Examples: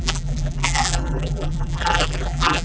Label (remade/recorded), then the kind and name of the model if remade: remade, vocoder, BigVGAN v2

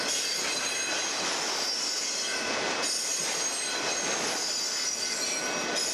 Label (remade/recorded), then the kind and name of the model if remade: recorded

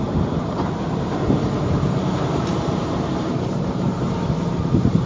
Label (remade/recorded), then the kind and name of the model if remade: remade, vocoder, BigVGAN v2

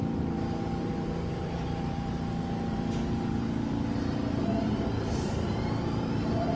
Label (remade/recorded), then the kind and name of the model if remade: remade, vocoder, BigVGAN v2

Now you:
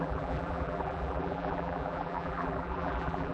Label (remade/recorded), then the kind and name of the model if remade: remade, vocoder, BigVGAN v2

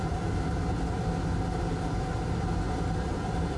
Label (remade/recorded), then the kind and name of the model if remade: remade, vocoder, BigVGAN v2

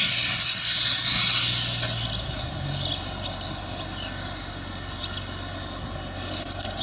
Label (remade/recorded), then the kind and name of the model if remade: recorded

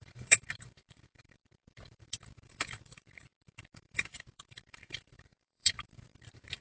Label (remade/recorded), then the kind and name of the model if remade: remade, vocoder, BigVGAN v2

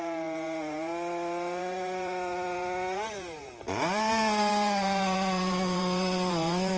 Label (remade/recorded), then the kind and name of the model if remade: remade, vocoder, BigVGAN v2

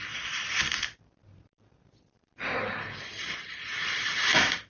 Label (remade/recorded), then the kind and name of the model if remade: remade, vocoder, BigVGAN v2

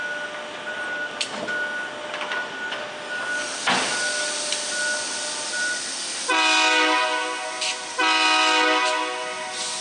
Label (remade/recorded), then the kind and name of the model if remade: recorded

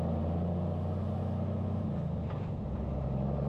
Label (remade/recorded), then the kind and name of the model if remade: recorded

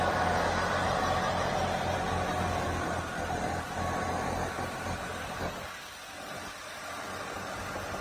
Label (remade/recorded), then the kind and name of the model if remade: recorded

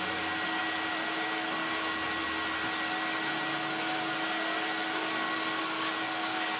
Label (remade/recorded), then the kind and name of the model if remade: recorded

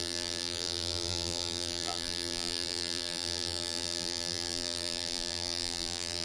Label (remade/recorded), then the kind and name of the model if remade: remade, vocoder, BigVGAN v2